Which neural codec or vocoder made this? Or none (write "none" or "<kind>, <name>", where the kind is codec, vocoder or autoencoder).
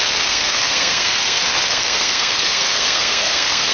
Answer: codec, SNAC